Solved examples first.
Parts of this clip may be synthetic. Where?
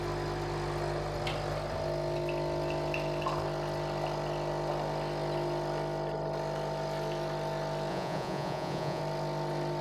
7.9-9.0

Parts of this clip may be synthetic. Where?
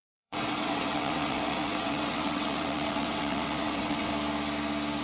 0.0-4.1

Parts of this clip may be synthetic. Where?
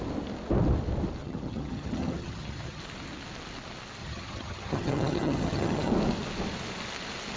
1.2-2.8; 4.0-5.9